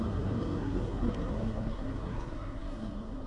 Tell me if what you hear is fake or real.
fake